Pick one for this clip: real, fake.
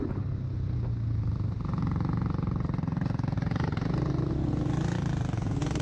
real